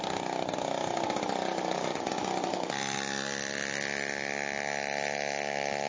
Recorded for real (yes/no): yes